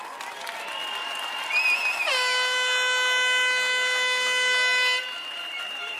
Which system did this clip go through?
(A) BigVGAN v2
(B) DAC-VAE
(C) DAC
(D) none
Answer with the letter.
D